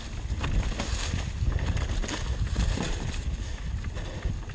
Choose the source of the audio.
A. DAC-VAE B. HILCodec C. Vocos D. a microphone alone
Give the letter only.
D